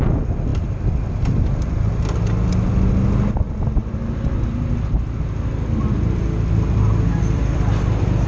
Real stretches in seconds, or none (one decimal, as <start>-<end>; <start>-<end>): 0.0-8.3